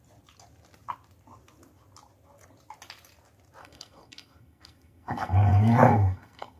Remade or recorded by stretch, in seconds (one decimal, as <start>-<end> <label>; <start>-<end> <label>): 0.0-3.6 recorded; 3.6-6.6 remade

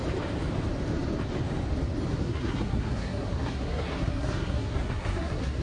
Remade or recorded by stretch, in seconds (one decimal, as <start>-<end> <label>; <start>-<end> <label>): 0.0-2.1 recorded; 2.1-5.6 remade

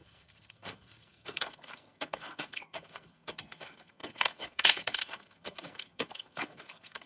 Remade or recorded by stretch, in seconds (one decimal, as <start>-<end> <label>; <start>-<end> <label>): 0.0-7.1 remade